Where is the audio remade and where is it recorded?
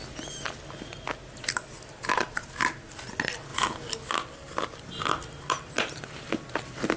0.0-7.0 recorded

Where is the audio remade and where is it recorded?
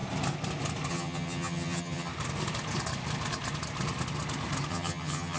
0.0-0.9 recorded; 0.9-2.1 remade; 2.1-4.7 recorded; 4.7-5.4 remade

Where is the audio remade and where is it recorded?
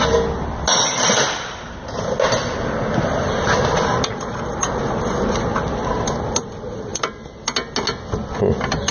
0.0-8.9 recorded